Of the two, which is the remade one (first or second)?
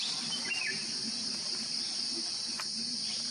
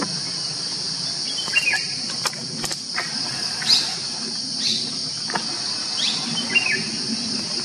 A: first